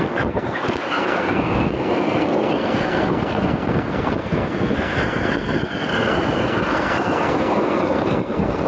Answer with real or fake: fake